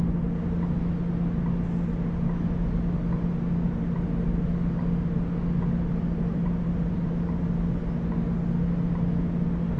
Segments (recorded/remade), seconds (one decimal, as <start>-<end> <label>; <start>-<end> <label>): 0.0-6.3 recorded; 6.3-7.1 remade; 7.1-9.8 recorded